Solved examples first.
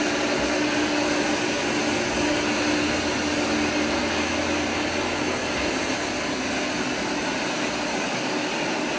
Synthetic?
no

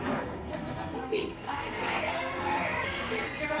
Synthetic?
yes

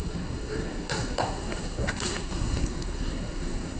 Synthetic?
yes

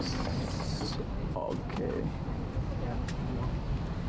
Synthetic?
no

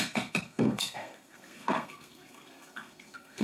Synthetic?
yes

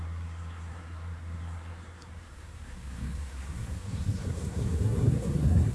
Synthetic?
yes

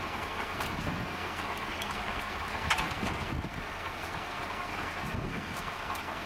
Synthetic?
yes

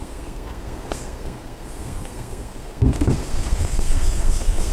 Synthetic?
yes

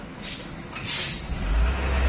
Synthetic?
no